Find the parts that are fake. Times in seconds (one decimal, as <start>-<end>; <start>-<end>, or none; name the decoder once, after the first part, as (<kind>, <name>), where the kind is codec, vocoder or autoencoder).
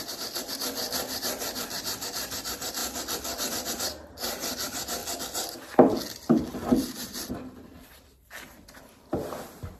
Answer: 0.0-2.8 (vocoder, BigVGAN v2); 3.5-5.0; 7.3-9.8